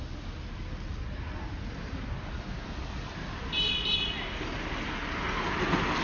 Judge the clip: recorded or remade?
recorded